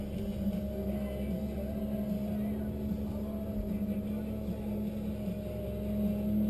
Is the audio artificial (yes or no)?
no